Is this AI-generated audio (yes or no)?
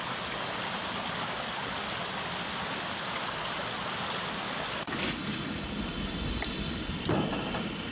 no